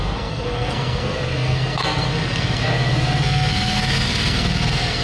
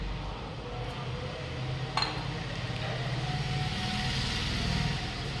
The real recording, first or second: second